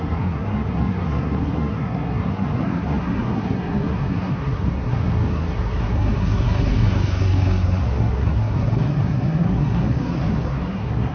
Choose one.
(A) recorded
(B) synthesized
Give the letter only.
B